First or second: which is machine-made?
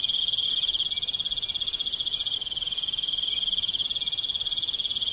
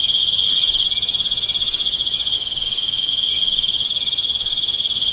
second